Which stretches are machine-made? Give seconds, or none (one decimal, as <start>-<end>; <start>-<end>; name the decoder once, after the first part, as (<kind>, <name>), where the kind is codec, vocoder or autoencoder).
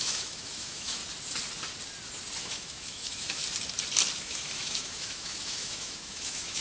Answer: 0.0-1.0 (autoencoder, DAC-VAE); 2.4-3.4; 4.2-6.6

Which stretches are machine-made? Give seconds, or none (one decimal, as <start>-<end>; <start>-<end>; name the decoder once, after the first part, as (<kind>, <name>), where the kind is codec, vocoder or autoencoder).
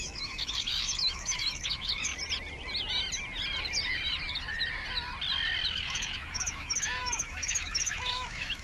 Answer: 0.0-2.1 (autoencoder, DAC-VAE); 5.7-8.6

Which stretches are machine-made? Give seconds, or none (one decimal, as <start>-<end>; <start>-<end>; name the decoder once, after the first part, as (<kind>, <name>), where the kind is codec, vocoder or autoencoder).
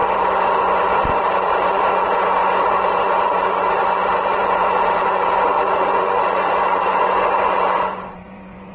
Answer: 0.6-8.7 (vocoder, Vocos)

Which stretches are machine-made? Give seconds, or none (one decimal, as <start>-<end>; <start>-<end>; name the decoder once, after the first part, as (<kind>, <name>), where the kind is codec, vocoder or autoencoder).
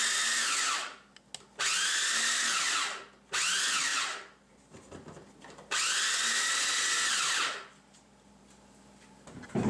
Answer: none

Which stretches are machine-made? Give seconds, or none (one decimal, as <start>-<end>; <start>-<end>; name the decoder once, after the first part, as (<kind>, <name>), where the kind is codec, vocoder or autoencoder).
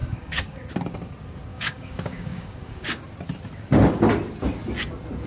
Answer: 0.0-0.6 (codec, DAC); 1.5-3.0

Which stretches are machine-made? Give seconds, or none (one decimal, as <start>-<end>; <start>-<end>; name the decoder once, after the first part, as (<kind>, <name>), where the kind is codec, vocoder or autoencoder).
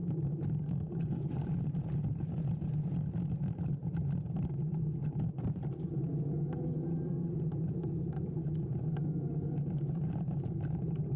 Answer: 0.0-1.4 (codec, DAC)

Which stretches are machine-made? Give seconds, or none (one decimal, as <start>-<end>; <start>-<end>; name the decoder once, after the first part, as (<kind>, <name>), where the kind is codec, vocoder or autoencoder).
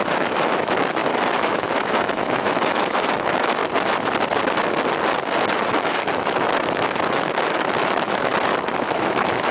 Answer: 0.0-3.6 (autoencoder, DAC-VAE); 5.7-8.3; 8.9-9.5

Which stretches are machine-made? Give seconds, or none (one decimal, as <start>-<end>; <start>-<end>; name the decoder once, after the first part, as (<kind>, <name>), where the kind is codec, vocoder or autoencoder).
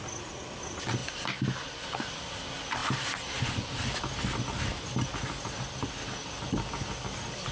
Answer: none